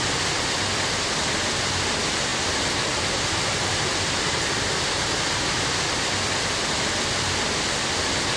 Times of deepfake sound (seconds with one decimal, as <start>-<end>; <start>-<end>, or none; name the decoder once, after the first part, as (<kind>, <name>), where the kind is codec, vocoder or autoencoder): none